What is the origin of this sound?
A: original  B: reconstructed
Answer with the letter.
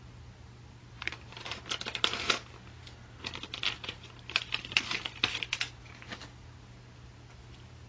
A